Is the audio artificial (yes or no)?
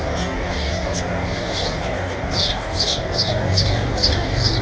yes